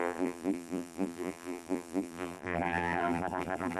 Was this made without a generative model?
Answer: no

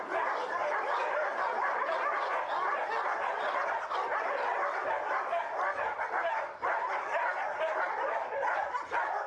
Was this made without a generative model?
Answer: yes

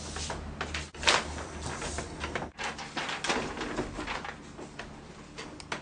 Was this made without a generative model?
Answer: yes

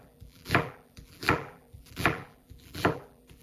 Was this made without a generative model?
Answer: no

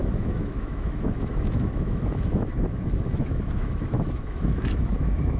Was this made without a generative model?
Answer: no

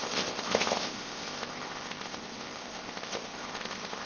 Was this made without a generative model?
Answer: no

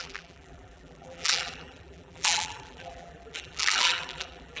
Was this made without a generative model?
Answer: no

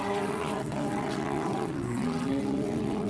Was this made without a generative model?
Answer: no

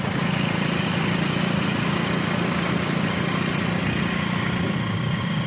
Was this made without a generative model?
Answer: yes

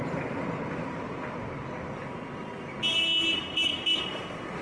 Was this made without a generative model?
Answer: yes